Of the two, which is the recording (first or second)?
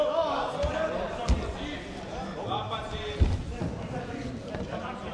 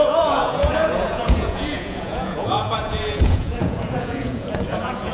first